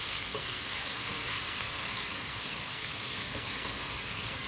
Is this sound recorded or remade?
remade